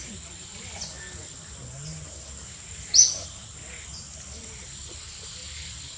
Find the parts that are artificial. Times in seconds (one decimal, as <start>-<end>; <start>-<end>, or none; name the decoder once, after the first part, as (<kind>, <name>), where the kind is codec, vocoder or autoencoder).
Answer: none